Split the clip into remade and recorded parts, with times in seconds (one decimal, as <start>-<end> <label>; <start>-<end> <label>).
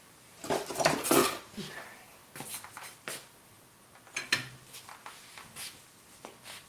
0.0-6.7 recorded